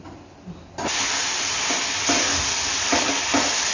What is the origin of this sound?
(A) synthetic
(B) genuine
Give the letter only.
B